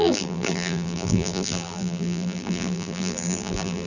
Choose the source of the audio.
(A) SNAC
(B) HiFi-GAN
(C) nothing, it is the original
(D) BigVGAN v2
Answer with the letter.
D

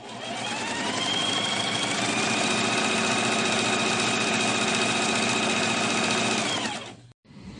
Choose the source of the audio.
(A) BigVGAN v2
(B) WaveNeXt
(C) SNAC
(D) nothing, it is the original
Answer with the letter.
D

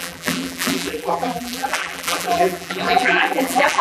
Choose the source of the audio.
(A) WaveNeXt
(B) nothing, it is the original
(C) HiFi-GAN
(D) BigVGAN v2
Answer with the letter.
D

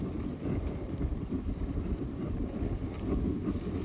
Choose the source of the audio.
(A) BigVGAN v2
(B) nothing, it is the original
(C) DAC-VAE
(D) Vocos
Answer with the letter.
B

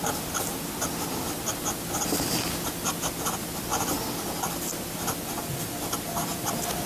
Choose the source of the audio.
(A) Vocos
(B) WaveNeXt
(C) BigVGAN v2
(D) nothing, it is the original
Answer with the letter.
D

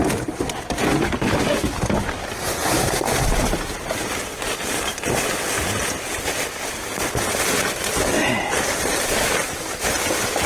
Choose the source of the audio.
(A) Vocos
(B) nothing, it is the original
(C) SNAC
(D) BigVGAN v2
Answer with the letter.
B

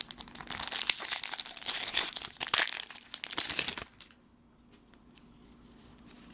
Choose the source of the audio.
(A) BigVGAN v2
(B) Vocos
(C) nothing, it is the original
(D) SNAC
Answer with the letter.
C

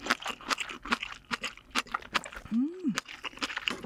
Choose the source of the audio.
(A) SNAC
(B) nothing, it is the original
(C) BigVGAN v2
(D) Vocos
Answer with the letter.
B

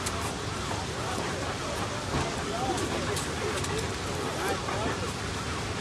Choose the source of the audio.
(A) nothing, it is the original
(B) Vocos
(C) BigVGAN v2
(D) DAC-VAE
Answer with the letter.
A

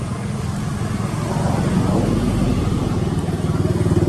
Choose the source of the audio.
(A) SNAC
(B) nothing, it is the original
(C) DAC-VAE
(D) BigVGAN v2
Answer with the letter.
B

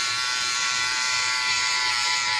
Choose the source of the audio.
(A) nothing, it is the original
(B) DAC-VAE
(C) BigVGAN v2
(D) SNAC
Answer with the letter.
C